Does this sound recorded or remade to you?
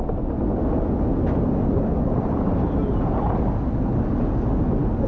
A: recorded